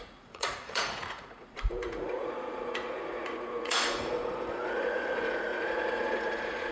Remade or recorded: remade